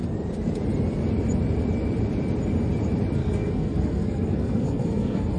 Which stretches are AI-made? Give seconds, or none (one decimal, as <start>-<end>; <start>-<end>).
3.2-5.4